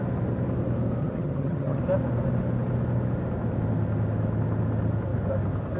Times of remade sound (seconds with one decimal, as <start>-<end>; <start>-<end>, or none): 1.0-1.8